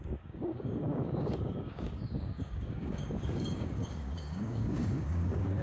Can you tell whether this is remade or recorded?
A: remade